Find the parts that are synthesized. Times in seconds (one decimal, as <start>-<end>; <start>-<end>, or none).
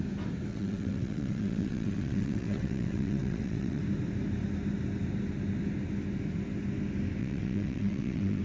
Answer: 0.5-3.8; 7.2-8.4